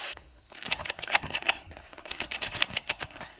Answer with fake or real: fake